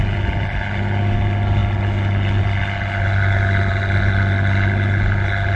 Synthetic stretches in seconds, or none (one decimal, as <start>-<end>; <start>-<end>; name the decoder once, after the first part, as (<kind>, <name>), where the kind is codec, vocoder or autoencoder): none